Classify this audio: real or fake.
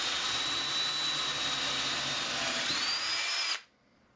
real